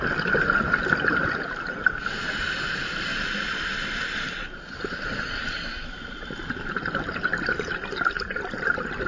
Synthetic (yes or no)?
no